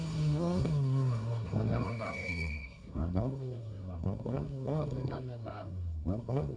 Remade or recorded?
remade